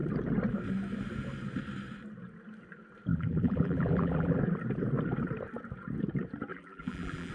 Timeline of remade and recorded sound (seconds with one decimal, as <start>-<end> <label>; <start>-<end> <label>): 0.0-3.1 recorded; 3.1-4.4 remade; 4.4-6.5 recorded; 6.5-7.3 remade